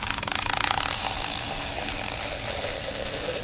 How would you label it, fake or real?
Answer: real